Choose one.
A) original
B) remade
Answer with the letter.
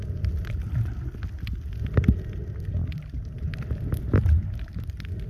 A